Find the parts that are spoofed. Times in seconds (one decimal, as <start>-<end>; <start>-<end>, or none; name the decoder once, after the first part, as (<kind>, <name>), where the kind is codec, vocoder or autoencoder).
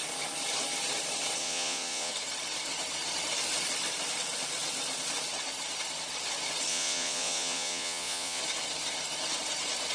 1.4-2.1 (vocoder, Vocos); 6.7-8.4